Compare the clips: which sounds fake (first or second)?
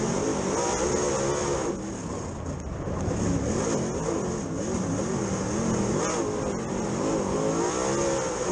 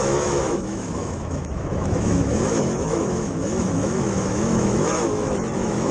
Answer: second